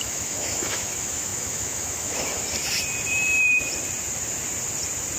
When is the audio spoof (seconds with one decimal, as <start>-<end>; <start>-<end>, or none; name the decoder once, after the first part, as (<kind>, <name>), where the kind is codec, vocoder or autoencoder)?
0.0-2.3 (autoencoder, DAC-VAE)